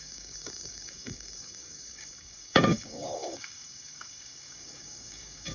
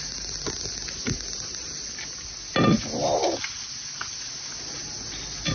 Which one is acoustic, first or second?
second